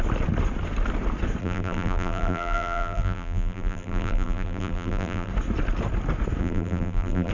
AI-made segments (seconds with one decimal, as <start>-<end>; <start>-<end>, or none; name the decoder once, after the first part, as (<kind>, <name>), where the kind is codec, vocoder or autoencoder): 1.4-5.3 (vocoder, BigVGAN v2); 6.4-7.3